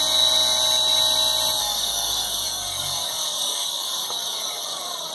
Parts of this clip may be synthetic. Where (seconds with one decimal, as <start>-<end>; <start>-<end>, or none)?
1.6-5.1